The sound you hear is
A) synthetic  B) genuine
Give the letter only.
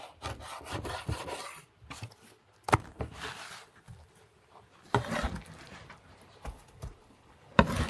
A